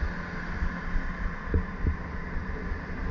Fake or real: real